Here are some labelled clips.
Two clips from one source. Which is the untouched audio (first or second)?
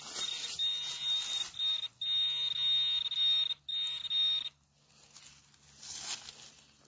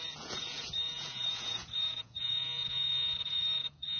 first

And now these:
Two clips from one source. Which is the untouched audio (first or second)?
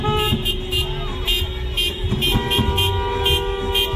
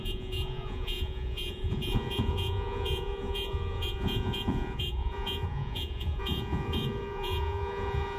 first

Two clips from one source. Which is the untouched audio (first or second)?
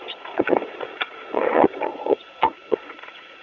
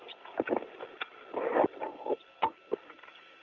second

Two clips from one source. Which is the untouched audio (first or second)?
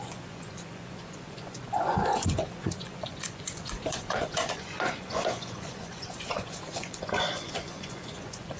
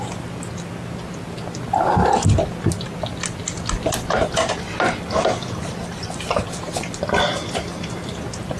second